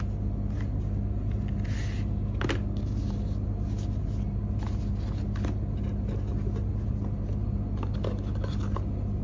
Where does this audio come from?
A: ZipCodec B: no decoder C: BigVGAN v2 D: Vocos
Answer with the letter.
B